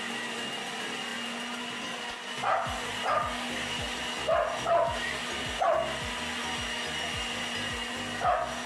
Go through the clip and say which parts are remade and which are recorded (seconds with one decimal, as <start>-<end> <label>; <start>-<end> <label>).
0.0-8.7 recorded